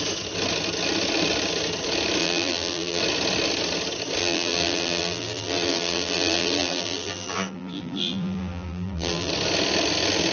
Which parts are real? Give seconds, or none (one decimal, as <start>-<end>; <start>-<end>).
0.0-2.2; 3.0-4.2; 9.3-10.3